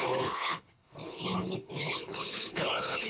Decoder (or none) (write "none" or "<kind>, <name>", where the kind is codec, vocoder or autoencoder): codec, HILCodec